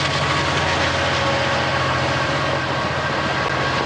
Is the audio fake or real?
real